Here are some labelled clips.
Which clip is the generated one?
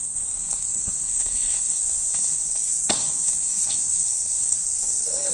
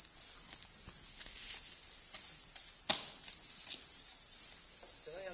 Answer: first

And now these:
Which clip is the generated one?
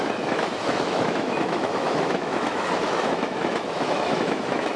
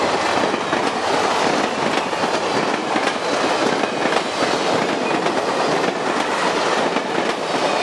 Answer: first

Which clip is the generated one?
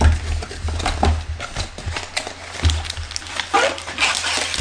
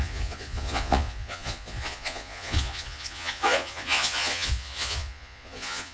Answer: second